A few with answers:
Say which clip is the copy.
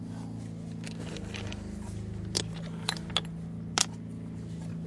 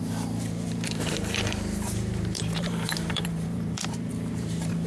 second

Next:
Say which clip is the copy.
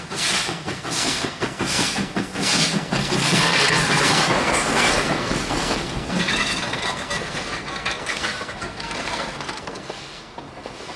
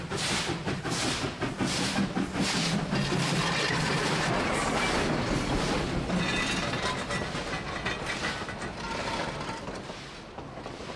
first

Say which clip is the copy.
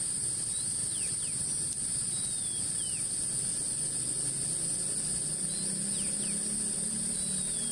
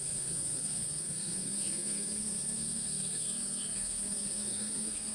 second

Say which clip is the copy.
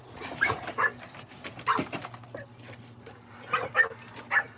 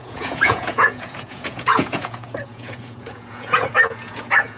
second